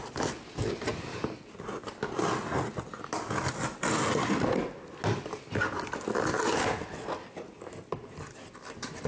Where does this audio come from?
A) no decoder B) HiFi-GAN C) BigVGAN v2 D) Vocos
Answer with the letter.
A